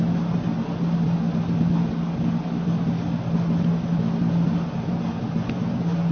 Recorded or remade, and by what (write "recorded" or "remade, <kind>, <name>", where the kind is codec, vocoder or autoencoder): recorded